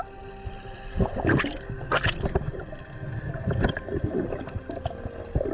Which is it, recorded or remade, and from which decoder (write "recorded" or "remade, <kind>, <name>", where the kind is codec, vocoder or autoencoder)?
recorded